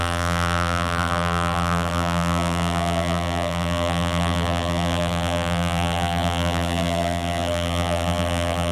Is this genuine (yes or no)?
no